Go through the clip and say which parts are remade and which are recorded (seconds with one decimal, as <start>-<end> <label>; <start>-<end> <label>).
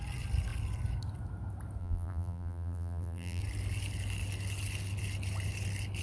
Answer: 0.0-1.8 recorded; 1.8-3.4 remade; 3.4-6.0 recorded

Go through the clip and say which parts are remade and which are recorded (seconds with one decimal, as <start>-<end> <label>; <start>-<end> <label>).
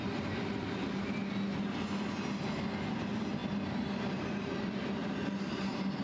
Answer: 0.0-6.0 recorded